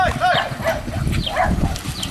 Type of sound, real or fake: real